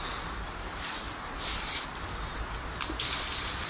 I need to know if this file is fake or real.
fake